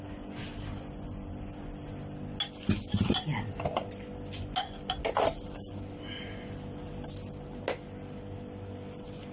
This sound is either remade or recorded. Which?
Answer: recorded